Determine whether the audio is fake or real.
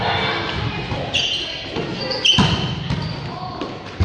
real